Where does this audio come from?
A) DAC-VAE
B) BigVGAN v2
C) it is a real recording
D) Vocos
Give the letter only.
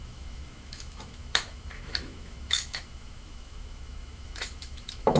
A